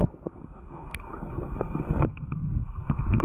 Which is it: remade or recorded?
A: remade